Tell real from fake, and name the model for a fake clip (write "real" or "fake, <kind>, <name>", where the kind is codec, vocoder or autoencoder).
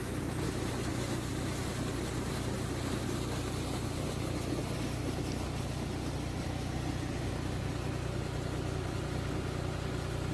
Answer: real